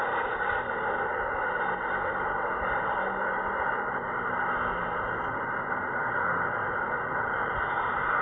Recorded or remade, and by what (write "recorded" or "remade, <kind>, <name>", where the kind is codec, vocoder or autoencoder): recorded